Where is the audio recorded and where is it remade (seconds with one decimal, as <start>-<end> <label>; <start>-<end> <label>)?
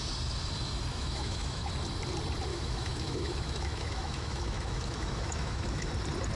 0.0-0.9 recorded; 0.9-1.7 remade; 1.7-2.5 recorded; 2.5-5.9 remade; 5.9-6.4 recorded